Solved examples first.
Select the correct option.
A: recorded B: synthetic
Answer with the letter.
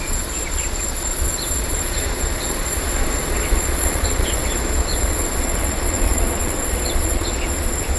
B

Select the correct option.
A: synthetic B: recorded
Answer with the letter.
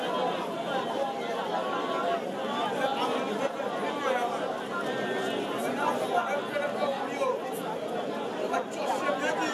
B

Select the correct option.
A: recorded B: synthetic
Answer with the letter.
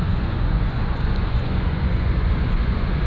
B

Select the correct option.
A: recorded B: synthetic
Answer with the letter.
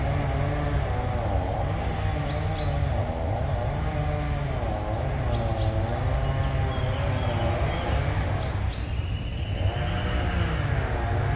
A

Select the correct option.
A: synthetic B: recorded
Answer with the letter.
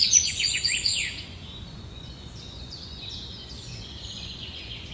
A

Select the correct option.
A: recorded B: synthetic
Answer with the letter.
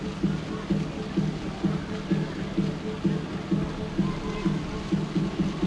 A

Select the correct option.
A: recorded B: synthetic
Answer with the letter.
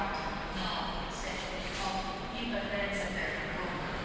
A